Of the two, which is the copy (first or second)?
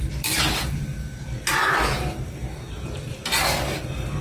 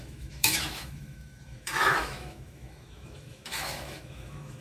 second